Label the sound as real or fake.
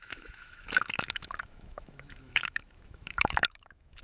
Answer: fake